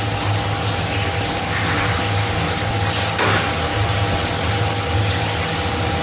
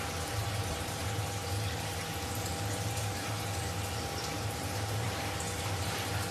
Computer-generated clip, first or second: second